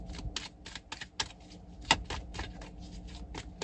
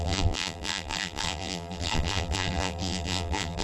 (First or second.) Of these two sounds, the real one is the first